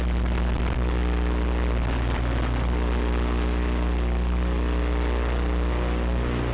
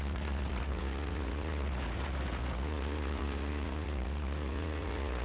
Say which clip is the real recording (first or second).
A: first